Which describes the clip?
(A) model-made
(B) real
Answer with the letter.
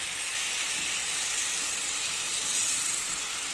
B